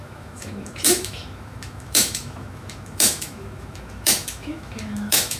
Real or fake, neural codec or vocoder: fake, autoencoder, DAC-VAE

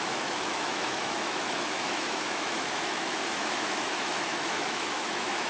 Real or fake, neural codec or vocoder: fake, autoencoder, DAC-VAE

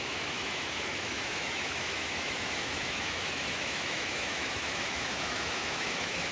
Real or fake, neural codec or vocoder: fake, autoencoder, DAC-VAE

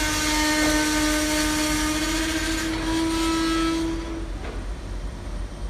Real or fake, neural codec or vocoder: real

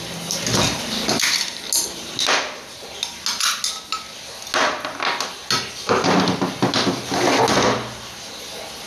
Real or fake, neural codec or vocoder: real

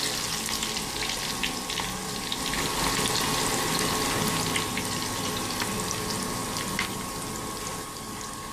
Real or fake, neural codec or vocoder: real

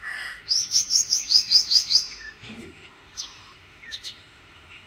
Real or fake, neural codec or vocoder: fake, autoencoder, DAC-VAE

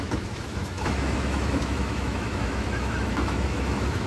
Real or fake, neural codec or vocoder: fake, autoencoder, DAC-VAE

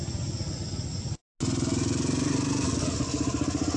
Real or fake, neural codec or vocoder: real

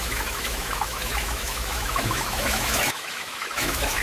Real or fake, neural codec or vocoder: fake, autoencoder, DAC-VAE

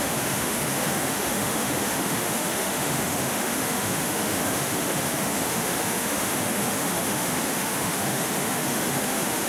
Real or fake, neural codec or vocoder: fake, autoencoder, DAC-VAE